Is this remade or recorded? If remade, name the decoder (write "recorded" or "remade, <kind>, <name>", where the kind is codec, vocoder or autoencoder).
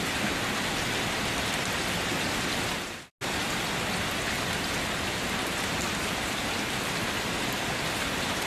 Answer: recorded